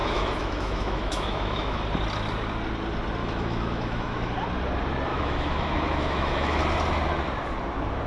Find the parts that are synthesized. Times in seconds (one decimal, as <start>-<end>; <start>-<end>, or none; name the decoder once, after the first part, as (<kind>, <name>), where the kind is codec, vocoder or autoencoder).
0.0-1.8 (autoencoder, DAC-VAE); 3.2-4.3; 5.1-6.6